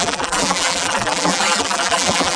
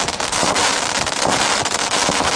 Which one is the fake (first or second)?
first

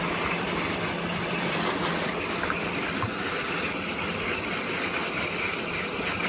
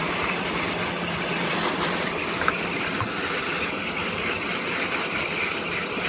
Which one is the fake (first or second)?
second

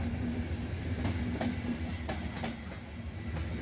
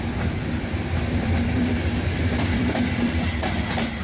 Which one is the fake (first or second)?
second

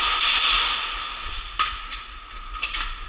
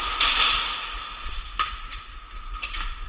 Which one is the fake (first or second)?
second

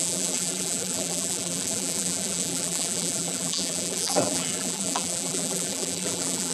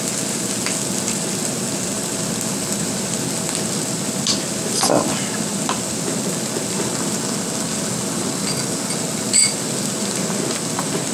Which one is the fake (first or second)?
first